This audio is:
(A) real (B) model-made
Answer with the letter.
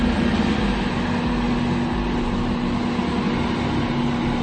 A